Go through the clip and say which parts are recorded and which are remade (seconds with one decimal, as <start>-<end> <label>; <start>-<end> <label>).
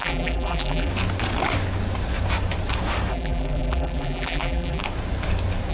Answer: 0.0-0.9 remade; 0.9-3.1 recorded; 3.1-4.8 remade; 4.8-5.7 recorded